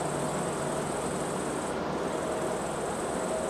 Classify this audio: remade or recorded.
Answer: recorded